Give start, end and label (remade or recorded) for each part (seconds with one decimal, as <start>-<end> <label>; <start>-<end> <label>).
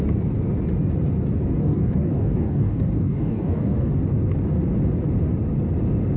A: 0.0-1.6 recorded; 1.6-3.9 remade; 3.9-6.2 recorded